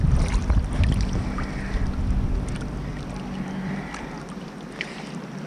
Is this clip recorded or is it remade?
recorded